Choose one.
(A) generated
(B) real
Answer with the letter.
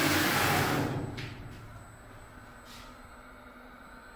B